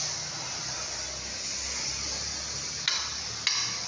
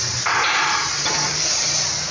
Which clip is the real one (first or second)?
first